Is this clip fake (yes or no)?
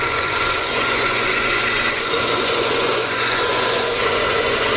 yes